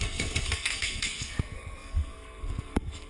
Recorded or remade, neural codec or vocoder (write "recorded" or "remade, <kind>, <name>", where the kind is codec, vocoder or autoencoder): remade, codec, SNAC